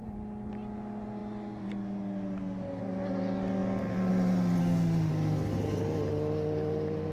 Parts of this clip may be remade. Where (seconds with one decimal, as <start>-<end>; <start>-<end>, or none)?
4.6-5.1